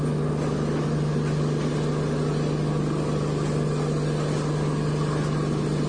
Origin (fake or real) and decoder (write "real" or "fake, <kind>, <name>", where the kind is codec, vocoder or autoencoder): real